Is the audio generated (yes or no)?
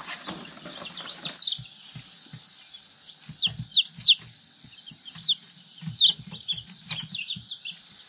no